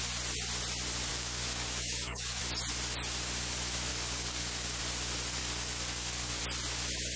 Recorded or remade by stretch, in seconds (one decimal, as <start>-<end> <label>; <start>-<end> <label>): 0.0-1.1 recorded; 1.1-2.4 remade; 2.4-3.9 recorded; 3.9-4.8 remade; 4.8-5.4 recorded; 5.4-6.4 remade; 6.4-7.2 recorded